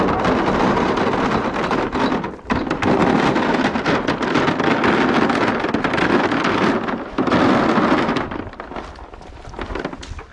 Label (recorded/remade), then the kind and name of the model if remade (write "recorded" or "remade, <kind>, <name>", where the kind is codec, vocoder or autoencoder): recorded